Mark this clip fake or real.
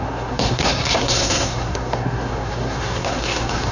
fake